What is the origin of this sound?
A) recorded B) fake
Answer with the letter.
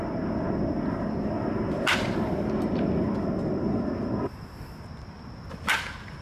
A